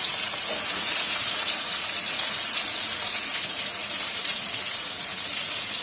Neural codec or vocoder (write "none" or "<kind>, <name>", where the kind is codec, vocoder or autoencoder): vocoder, Vocos